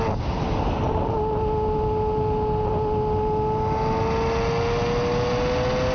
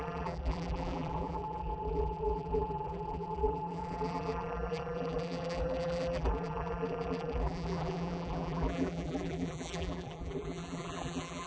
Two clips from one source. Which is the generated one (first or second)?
second